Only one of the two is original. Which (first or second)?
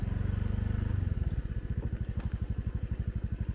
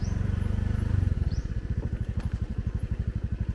first